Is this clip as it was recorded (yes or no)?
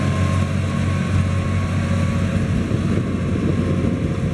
yes